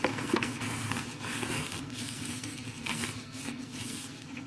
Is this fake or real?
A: fake